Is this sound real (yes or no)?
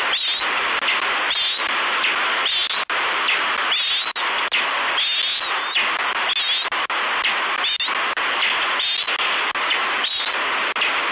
yes